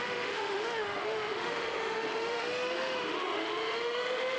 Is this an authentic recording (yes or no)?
no